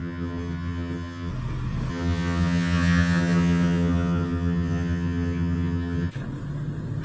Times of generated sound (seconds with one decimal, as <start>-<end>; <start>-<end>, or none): 0.0-1.3; 1.9-6.1